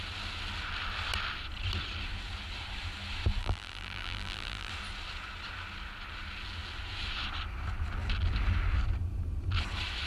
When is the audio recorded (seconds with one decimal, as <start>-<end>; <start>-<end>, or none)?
0.0-3.4; 4.7-10.1

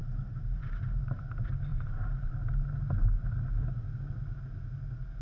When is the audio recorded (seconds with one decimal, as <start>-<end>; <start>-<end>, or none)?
1.2-1.7; 2.3-5.2